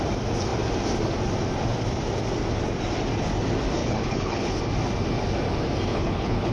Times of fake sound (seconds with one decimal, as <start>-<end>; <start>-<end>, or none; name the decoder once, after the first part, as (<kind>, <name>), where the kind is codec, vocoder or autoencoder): 3.8-4.6 (codec, HILCodec); 5.9-6.5

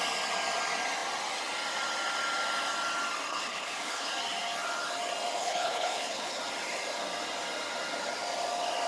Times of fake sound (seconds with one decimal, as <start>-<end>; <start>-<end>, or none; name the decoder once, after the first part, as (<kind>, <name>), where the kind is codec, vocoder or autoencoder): 3.3-4.1 (codec, HILCodec); 5.4-6.4

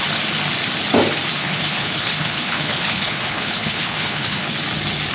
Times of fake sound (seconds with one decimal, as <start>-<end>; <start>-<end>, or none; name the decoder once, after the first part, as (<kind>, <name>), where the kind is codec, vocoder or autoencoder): 1.4-4.5 (codec, HILCodec)

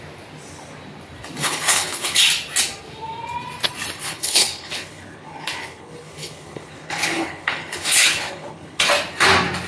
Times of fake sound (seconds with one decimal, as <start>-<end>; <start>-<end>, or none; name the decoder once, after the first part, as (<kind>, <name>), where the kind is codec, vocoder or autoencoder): 1.4-2.2 (codec, HILCodec); 4.0-8.9